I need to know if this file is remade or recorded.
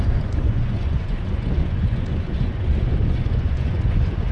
remade